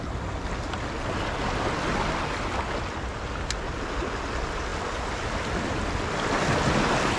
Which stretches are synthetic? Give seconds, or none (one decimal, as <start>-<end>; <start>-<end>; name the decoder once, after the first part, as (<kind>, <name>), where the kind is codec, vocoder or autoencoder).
none